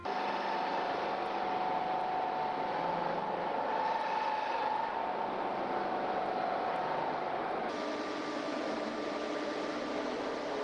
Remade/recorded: recorded